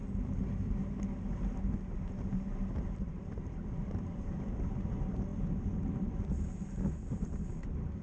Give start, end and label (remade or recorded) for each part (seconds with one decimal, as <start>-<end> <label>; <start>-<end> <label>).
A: 0.0-8.0 recorded